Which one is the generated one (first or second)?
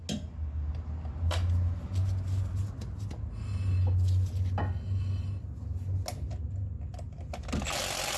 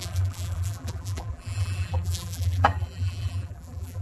second